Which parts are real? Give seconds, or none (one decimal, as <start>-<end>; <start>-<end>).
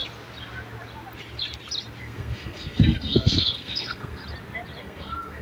0.0-2.0; 4.2-4.8